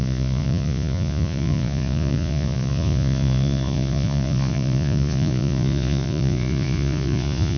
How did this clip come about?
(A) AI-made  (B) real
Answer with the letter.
A